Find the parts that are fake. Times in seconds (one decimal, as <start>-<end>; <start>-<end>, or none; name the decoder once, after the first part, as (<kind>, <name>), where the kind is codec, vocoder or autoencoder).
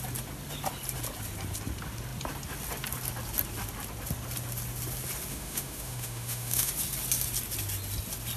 5.3-6.7 (autoencoder, DAC-VAE)